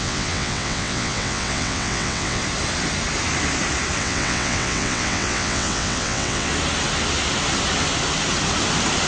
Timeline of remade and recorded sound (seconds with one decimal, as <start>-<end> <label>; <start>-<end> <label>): 0.0-2.4 remade; 2.4-4.0 recorded; 4.0-6.5 remade; 6.5-9.1 recorded